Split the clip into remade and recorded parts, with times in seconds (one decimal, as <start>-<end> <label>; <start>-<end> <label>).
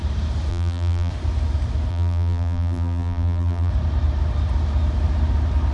0.0-0.5 recorded; 0.5-1.1 remade; 1.1-1.9 recorded; 1.9-3.7 remade; 3.7-5.7 recorded